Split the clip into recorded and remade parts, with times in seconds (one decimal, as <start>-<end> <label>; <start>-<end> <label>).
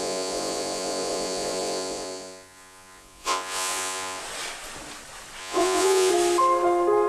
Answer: 0.0-4.2 remade; 4.2-5.4 recorded; 5.4-6.1 remade; 6.1-7.1 recorded